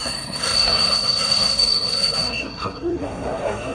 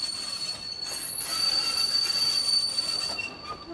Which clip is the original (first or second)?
second